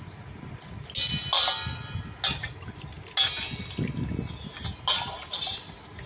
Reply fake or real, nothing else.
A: real